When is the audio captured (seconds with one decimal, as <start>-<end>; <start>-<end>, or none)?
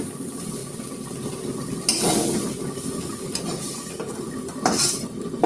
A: 0.6-3.9